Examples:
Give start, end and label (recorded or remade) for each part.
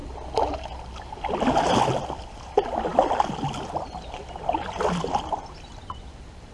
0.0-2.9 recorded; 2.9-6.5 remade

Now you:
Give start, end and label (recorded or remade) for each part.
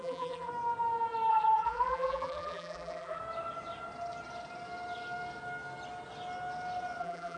0.0-0.5 remade; 0.5-1.3 recorded; 1.3-3.2 remade; 3.2-7.0 recorded; 7.0-7.4 remade